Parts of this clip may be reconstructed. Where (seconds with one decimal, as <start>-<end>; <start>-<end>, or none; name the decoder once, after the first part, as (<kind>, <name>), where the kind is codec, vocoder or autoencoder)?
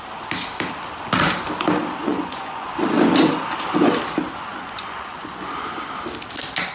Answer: 2.0-2.8 (vocoder, Vocos); 4.5-5.8